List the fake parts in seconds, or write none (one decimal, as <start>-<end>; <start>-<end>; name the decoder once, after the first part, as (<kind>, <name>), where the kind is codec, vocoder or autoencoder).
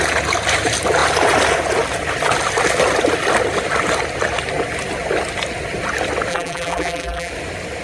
6.3-7.3 (vocoder, BigVGAN v2)